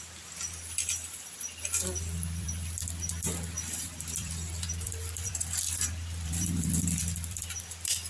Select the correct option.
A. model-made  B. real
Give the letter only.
A